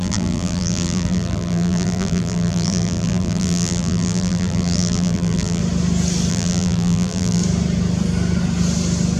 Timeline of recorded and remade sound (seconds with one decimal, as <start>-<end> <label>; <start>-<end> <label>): 0.0-5.6 remade; 5.6-6.3 recorded; 6.3-7.4 remade; 7.4-9.2 recorded